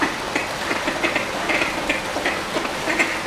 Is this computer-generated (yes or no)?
no